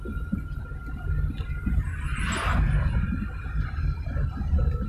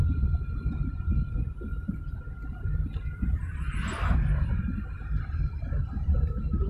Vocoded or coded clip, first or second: second